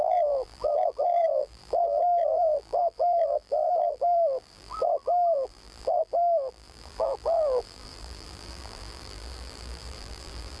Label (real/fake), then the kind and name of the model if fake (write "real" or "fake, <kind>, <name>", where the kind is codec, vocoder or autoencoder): fake, vocoder, BigVGAN v2